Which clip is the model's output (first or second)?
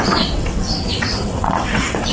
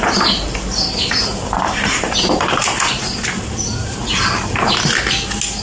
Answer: first